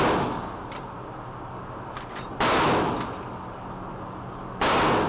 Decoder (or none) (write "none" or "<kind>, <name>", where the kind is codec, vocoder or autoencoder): none